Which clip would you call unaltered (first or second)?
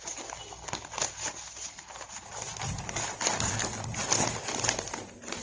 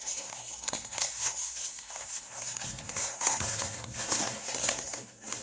first